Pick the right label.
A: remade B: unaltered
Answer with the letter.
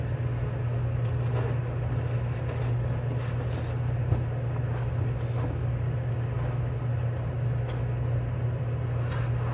B